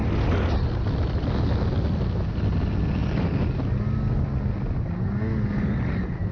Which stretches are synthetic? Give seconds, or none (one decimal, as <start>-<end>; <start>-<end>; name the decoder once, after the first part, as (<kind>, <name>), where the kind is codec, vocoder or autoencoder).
none